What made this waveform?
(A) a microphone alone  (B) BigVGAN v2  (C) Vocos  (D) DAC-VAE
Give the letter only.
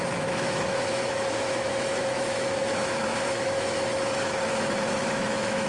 D